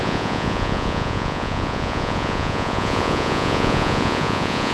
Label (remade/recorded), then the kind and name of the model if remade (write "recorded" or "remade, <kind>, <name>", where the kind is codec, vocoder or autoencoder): remade, vocoder, Vocos